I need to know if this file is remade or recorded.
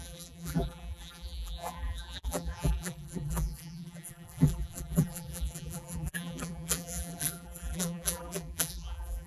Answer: remade